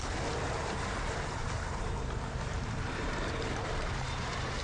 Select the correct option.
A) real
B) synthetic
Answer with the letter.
B